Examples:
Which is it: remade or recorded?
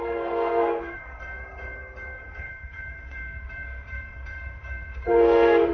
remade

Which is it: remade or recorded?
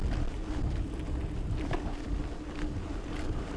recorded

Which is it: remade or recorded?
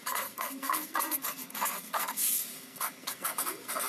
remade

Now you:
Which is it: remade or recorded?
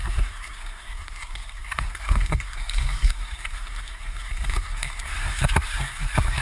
remade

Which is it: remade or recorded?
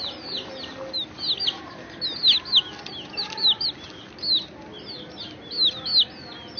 recorded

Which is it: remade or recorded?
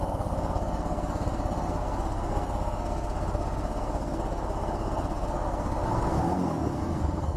remade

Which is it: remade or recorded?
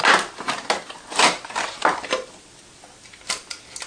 recorded